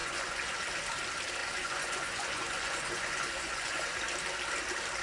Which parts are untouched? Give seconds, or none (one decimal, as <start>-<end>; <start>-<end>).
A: 0.7-1.4; 4.0-5.0